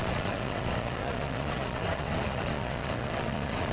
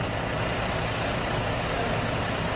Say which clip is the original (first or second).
second